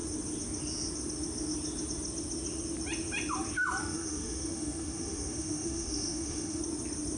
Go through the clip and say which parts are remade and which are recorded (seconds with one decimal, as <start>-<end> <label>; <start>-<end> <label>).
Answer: 0.0-3.8 recorded; 3.8-6.6 remade; 6.6-7.2 recorded